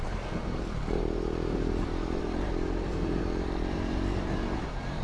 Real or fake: fake